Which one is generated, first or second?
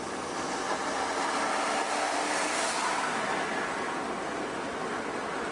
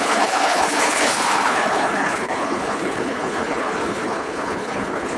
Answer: second